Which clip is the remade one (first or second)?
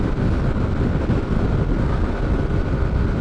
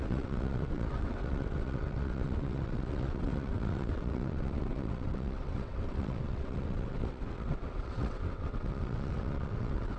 second